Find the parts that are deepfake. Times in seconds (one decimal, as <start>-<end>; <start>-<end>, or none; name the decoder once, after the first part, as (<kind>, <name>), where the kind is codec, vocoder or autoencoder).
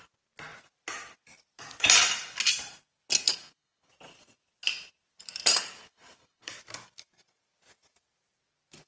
3.3-3.9 (codec, HILCodec); 5.5-6.6